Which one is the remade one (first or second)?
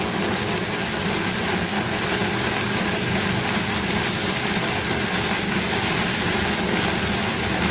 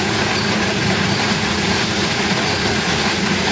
second